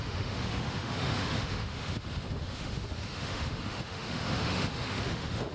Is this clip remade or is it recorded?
remade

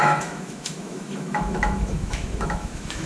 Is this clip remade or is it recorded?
remade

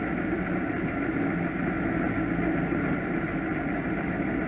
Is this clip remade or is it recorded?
recorded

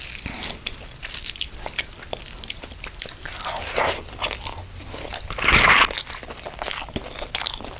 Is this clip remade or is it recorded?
recorded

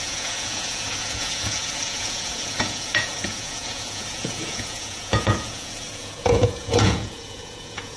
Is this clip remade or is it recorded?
remade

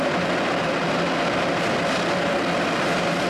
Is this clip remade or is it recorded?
recorded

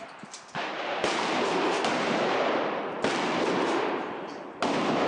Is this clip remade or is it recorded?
recorded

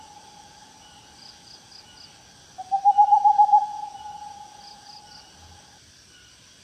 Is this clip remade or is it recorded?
recorded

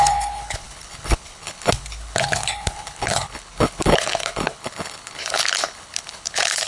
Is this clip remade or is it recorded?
remade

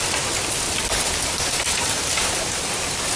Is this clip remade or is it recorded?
recorded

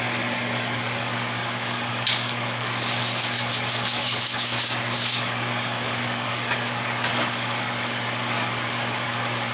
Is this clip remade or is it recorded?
remade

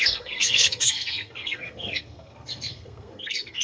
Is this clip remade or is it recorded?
remade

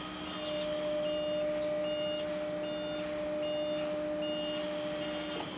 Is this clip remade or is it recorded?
recorded